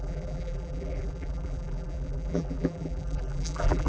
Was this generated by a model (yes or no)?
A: yes